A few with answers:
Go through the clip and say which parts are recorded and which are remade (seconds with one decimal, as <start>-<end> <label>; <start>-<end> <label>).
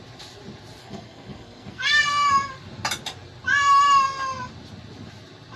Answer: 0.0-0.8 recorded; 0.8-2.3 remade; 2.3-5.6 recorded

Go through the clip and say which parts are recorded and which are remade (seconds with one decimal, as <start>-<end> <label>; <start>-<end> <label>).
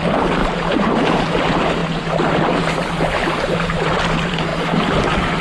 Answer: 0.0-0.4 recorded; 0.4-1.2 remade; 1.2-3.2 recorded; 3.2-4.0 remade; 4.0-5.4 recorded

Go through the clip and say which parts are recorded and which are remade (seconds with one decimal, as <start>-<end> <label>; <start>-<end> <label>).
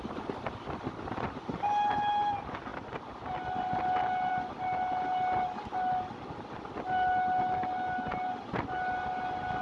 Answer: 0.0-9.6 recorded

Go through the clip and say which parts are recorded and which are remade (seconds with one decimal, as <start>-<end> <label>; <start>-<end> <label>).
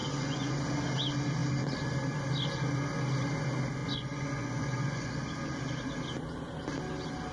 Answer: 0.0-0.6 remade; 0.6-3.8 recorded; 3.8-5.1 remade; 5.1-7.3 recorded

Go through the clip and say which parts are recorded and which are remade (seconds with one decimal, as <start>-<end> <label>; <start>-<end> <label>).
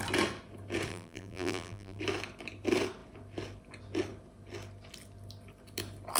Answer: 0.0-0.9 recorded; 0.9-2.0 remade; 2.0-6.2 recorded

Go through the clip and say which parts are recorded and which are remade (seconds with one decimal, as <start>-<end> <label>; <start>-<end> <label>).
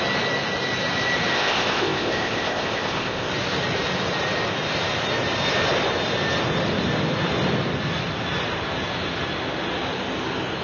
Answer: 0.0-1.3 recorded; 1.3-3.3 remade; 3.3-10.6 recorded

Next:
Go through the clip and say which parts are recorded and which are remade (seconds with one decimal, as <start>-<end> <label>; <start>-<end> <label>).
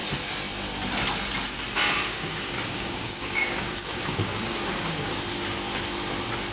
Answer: 0.0-2.1 recorded; 2.1-5.2 remade; 5.2-6.5 recorded